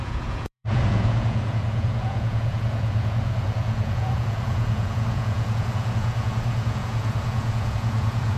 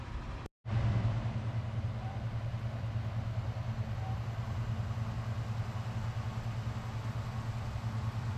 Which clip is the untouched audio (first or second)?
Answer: second